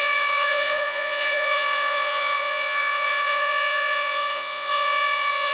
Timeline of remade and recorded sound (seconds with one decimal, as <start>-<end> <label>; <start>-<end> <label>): 0.0-5.5 remade